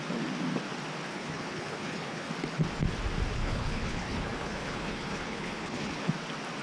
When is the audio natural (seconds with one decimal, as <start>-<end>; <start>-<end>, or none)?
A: 0.0-1.1; 2.3-3.4; 6.1-6.6